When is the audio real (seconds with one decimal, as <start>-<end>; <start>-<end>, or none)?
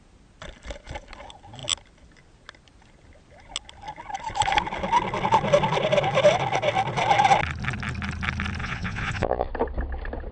0.0-8.6; 9.5-10.3